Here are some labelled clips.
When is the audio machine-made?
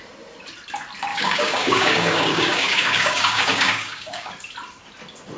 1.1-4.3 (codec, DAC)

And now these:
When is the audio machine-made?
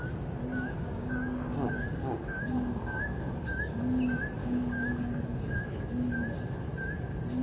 0.5-3.8 (codec, DAC); 4.4-5.9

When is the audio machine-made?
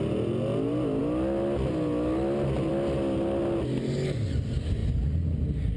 none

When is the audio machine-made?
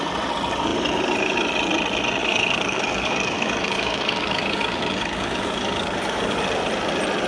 2.2-6.4 (codec, DAC)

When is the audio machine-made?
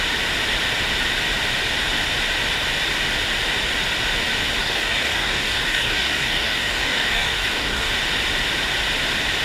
4.6-7.9 (codec, DAC)